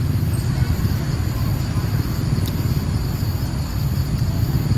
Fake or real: real